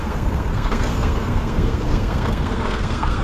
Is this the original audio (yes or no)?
no